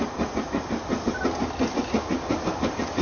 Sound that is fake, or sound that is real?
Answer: real